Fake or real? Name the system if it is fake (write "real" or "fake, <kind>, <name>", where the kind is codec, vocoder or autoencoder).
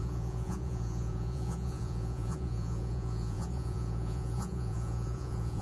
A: fake, vocoder, Vocos